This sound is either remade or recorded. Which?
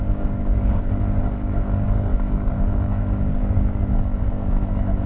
remade